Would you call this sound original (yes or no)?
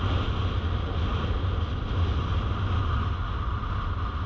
yes